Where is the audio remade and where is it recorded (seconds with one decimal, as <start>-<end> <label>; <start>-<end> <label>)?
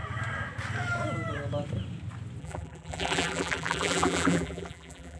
0.0-2.4 recorded; 2.4-5.2 remade